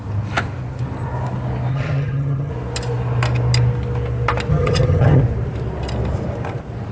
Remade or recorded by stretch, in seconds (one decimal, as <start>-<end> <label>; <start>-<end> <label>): 0.0-1.7 recorded; 1.7-2.5 remade; 2.5-4.5 recorded; 4.5-5.2 remade; 5.2-6.9 recorded